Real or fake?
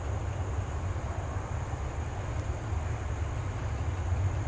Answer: real